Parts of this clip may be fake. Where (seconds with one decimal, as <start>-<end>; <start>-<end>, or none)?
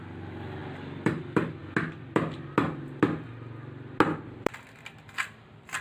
0.0-1.6; 5.0-5.8